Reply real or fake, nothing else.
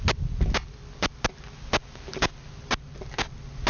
real